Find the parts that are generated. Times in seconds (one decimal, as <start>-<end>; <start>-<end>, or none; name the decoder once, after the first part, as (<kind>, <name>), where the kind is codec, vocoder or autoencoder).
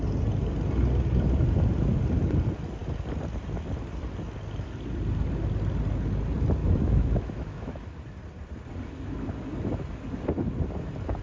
6.6-7.9 (autoencoder, DAC-VAE)